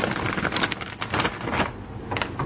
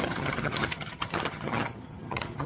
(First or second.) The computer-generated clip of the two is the second